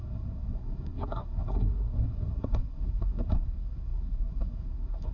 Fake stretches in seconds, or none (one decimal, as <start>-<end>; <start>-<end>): 0.0-5.1